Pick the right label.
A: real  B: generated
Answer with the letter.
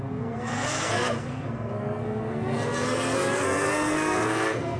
B